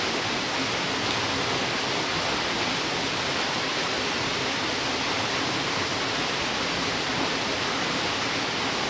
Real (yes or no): yes